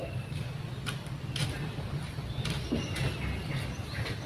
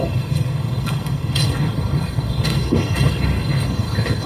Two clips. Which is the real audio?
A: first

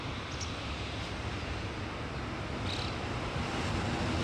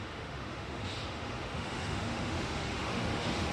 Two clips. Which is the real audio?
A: first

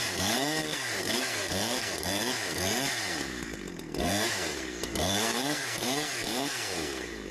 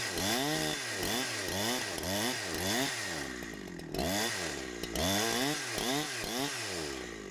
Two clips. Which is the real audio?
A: second